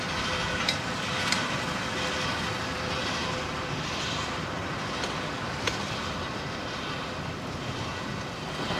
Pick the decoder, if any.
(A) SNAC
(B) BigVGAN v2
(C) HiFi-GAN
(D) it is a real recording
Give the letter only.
D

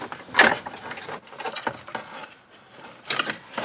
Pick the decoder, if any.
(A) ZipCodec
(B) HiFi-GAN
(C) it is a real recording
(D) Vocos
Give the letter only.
C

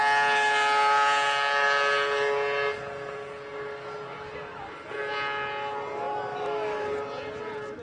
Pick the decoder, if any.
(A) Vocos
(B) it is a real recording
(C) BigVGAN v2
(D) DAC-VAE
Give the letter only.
B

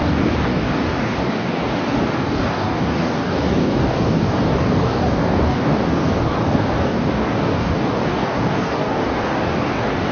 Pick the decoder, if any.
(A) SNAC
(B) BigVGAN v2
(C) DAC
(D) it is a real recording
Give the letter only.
C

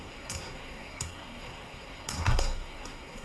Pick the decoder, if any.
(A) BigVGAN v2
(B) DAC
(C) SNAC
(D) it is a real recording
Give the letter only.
C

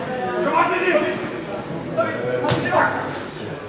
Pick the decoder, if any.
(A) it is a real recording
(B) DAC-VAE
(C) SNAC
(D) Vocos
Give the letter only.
A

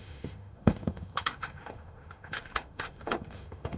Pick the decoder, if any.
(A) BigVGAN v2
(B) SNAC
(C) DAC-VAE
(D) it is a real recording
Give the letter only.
C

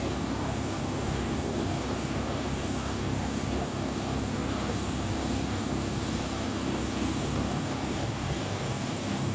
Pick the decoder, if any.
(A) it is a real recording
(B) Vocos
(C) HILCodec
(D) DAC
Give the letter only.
D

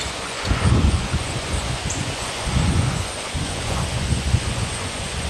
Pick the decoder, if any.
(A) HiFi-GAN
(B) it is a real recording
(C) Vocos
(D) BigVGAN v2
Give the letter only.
C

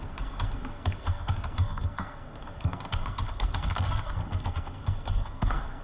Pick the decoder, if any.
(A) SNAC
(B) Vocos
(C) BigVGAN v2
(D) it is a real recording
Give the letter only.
A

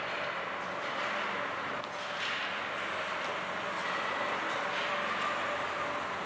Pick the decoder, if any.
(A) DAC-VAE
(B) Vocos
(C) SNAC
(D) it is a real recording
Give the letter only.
D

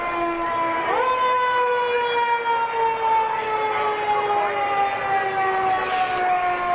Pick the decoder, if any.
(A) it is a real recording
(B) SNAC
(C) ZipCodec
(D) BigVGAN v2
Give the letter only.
A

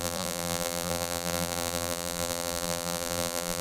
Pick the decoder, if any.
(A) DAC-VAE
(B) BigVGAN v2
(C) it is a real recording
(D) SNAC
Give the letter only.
B